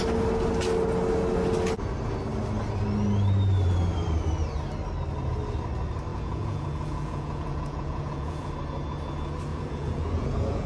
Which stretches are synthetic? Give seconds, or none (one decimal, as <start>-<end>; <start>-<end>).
6.1-8.5; 9.5-10.7